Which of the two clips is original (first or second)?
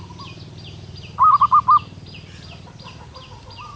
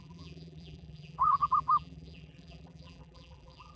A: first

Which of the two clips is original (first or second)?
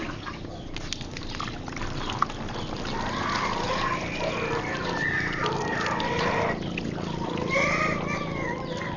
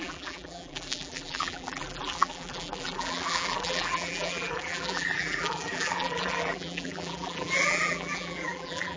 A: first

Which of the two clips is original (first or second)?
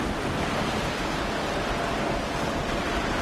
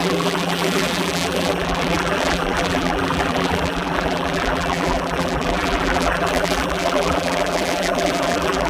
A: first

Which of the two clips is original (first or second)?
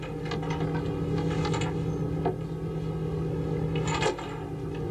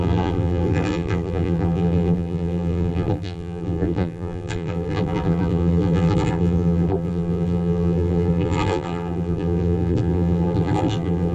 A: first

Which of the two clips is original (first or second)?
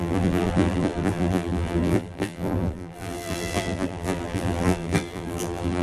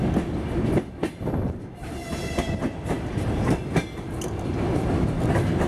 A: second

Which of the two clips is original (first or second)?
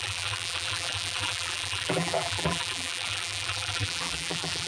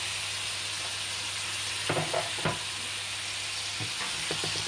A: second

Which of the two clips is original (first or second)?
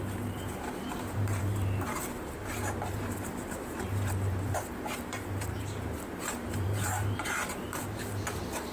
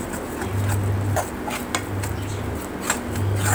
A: second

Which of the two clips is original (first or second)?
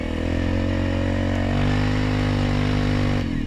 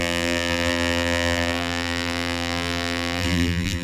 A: first